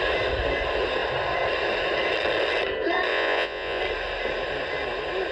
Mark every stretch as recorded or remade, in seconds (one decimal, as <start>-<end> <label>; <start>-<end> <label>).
0.0-3.1 recorded; 3.1-3.8 remade; 3.8-5.3 recorded